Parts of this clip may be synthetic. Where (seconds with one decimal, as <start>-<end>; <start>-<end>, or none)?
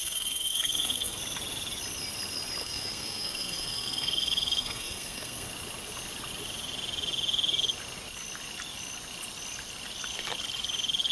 0.0-1.2; 2.6-5.5